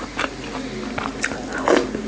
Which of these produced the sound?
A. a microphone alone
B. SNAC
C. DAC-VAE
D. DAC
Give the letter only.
A